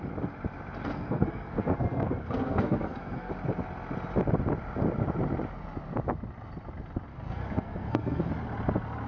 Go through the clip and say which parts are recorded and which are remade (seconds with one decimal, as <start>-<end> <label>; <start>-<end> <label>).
0.0-0.8 recorded; 0.8-3.3 remade; 3.3-7.1 recorded; 7.1-8.3 remade; 8.3-9.1 recorded